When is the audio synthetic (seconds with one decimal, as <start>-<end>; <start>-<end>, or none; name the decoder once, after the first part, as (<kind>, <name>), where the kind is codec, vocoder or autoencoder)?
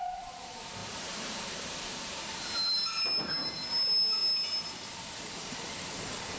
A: 0.8-2.2 (vocoder, BigVGAN v2)